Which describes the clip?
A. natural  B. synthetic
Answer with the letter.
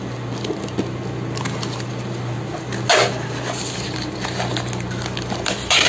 A